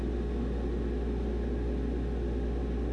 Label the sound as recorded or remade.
recorded